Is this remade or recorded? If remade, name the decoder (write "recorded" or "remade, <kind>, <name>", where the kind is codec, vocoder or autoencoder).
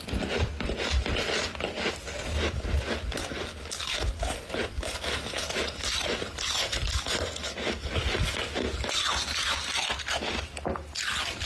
recorded